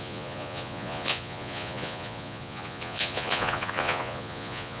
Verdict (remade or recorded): remade